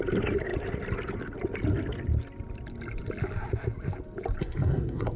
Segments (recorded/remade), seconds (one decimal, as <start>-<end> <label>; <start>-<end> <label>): 0.0-4.4 recorded; 4.4-5.2 remade